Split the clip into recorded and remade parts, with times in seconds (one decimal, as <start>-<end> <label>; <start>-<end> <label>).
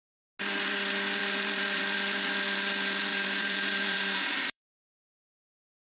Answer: 0.0-1.2 recorded; 1.2-1.8 remade; 1.8-3.1 recorded; 3.1-4.7 remade; 4.7-5.8 recorded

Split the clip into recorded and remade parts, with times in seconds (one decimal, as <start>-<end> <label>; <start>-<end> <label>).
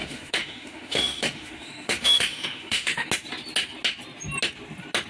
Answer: 0.0-3.1 remade; 3.1-5.1 recorded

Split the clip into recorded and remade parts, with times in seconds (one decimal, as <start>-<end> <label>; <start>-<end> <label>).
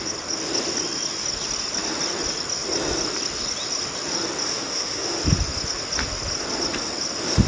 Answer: 0.0-4.5 recorded; 4.5-5.2 remade; 5.2-7.5 recorded